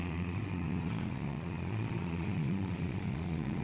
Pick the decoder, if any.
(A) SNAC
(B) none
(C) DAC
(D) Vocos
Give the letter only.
D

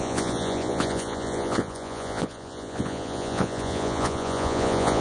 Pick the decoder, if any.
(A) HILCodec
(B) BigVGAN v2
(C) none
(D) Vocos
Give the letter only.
D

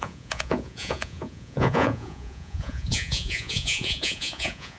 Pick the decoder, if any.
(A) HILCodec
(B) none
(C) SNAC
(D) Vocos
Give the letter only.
D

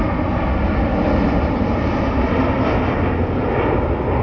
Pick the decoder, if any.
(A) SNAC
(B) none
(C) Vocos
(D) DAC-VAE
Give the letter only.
B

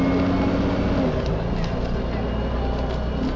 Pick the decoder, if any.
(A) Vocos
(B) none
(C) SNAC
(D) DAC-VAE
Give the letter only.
B